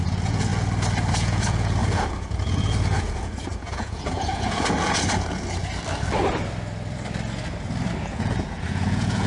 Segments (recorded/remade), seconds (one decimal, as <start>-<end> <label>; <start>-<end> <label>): 0.0-0.5 remade; 0.5-1.1 recorded; 1.1-5.6 remade; 5.6-8.0 recorded; 8.0-9.3 remade